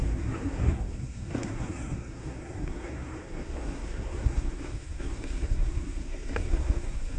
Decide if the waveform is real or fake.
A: fake